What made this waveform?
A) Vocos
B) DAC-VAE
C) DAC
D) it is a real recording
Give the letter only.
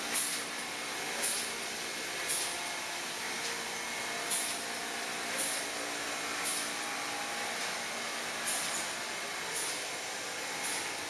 D